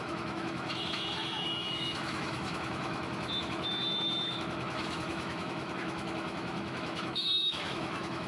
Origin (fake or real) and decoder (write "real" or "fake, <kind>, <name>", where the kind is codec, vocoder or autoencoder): fake, autoencoder, DAC-VAE